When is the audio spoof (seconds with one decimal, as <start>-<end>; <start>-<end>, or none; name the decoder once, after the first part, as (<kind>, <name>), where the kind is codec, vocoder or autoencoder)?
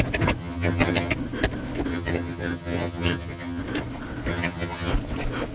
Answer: 0.4-1.1 (vocoder, HiFi-GAN); 1.9-3.6; 4.3-4.9